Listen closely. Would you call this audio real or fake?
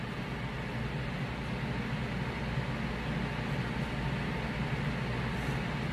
real